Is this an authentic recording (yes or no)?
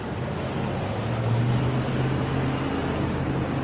yes